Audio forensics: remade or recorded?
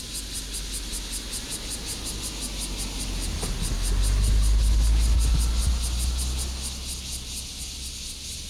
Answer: recorded